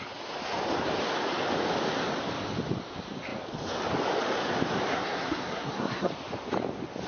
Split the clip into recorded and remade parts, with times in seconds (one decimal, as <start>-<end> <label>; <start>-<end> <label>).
0.0-4.9 recorded; 4.9-6.1 remade; 6.1-7.1 recorded